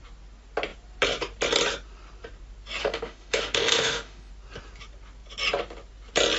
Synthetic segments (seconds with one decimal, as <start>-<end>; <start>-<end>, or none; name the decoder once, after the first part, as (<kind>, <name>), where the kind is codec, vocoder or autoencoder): 2.8-4.3 (autoencoder, DAC-VAE)